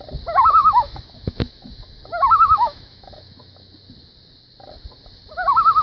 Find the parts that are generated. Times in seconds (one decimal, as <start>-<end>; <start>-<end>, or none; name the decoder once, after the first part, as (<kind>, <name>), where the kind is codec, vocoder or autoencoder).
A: 0.6-3.8 (autoencoder, DAC-VAE)